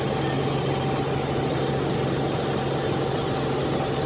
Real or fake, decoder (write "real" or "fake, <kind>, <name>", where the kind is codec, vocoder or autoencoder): real